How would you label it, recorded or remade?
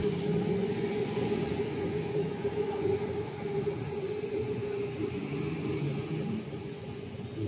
remade